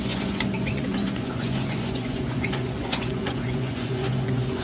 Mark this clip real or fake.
fake